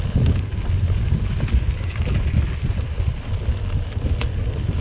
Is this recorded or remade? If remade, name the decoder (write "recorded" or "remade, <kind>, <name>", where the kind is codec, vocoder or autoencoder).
recorded